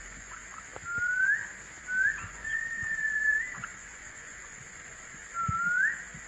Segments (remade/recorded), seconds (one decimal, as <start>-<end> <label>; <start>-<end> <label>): 0.0-0.4 remade; 0.4-2.1 recorded; 2.1-5.2 remade; 5.2-6.3 recorded